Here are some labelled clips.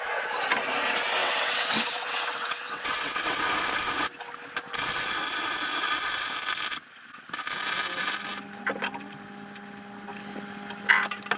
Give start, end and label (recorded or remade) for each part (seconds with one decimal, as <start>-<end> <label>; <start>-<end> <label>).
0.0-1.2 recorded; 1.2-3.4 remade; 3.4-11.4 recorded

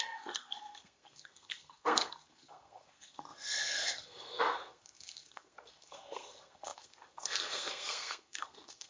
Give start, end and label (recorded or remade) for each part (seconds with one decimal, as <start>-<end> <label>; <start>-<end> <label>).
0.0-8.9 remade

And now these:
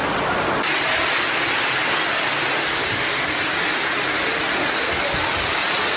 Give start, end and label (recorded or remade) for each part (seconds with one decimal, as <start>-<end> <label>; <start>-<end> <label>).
0.0-6.0 recorded